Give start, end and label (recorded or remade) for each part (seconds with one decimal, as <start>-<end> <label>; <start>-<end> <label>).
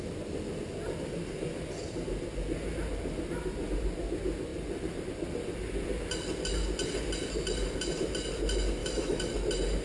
0.0-8.8 recorded; 8.8-9.3 remade; 9.3-9.8 recorded